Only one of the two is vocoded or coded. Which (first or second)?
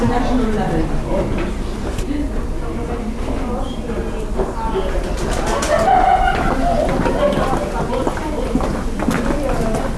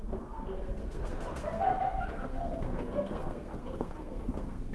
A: second